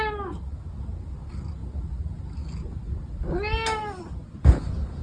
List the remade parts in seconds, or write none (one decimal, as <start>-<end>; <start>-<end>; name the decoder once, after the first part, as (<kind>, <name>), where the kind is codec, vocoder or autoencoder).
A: none

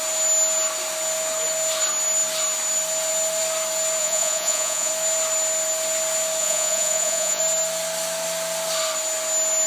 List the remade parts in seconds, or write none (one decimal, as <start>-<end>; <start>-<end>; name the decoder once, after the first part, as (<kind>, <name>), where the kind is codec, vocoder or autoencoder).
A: 4.0-4.9 (vocoder, Vocos); 6.4-7.4

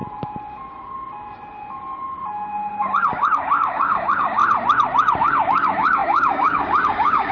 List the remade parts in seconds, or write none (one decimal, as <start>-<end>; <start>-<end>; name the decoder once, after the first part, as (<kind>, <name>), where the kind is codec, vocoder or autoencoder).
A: 2.7-4.4 (codec, DAC); 5.2-7.3